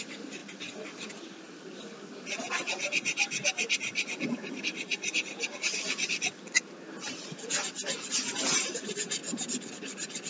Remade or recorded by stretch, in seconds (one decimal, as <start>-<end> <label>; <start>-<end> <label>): 0.0-10.3 recorded